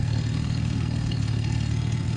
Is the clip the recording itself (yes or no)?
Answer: no